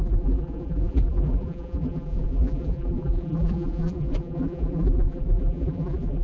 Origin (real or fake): fake